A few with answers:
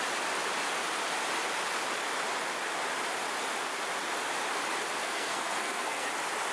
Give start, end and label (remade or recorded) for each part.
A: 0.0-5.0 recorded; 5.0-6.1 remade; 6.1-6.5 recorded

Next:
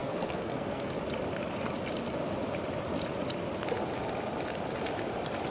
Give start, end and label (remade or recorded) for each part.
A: 0.0-0.9 remade; 0.9-5.5 recorded